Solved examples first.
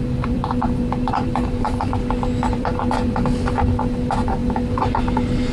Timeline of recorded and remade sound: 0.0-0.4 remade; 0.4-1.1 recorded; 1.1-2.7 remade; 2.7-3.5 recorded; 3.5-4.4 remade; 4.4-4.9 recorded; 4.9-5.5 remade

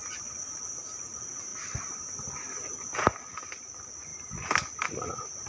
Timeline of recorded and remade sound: 0.0-1.5 recorded; 1.5-2.1 remade; 2.1-5.5 recorded

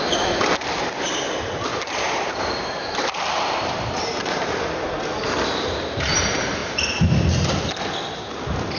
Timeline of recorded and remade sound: 0.0-1.7 recorded; 1.7-4.5 remade; 4.5-8.8 recorded

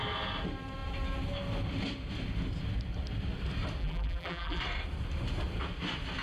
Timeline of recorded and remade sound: 0.0-3.8 recorded; 3.8-4.6 remade; 4.6-6.2 recorded

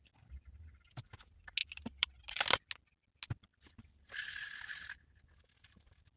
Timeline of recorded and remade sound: 0.0-1.6 recorded; 1.6-2.3 remade; 2.3-3.5 recorded; 3.5-4.2 remade; 4.2-6.2 recorded

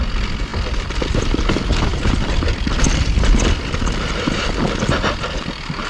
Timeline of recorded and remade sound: 0.0-1.9 recorded; 1.9-4.8 remade; 4.8-5.9 recorded

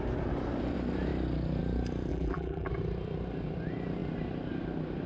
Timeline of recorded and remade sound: 0.0-2.1 recorded; 2.1-2.7 remade; 2.7-5.1 recorded

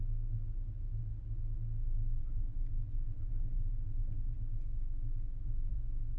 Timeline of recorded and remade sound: 0.0-0.4 recorded; 0.4-1.0 remade; 1.0-2.2 recorded; 2.2-4.4 remade; 4.4-6.2 recorded